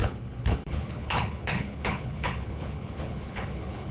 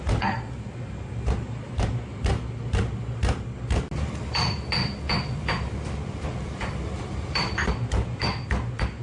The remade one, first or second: first